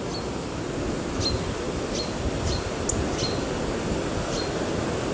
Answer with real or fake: real